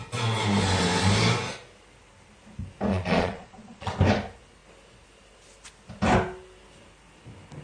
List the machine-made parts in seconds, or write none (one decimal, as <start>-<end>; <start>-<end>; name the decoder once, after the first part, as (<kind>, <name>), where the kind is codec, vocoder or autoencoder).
2.9-3.9 (vocoder, Vocos)

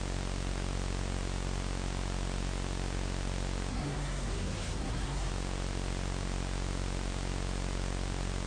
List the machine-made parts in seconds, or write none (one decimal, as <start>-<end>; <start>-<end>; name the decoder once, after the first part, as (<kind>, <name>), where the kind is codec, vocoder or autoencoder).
3.7-5.3 (codec, SNAC)

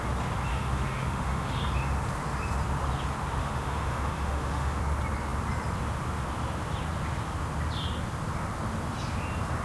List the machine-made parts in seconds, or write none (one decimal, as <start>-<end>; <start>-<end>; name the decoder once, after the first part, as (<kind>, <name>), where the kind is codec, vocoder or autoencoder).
0.5-1.6 (autoencoder, DAC-VAE); 3.4-4.8

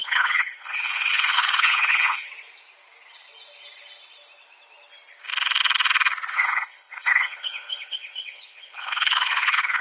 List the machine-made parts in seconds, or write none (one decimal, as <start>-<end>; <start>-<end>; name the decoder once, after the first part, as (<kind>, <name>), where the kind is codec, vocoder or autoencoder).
0.0-2.3 (codec, HILCodec); 6.3-9.8

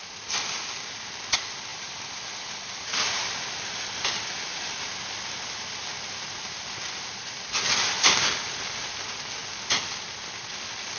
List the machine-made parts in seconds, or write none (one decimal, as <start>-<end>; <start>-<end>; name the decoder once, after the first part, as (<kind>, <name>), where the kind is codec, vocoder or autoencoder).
none

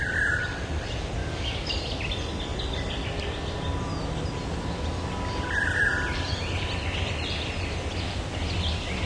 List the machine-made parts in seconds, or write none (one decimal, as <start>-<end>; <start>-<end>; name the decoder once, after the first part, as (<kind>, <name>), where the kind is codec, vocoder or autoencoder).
1.2-1.7 (codec, DAC)

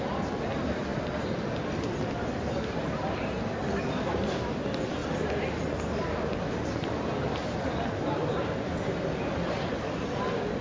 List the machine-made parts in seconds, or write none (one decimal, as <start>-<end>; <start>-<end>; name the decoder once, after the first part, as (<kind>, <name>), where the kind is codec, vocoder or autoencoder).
none